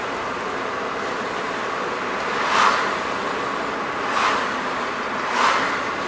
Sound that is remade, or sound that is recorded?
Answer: recorded